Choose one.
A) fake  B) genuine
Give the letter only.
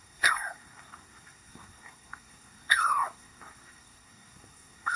A